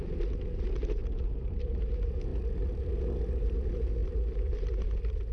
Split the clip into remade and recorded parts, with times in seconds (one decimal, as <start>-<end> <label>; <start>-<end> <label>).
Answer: 0.0-1.0 remade; 1.0-1.8 recorded; 1.8-2.3 remade; 2.3-3.4 recorded; 3.4-5.3 remade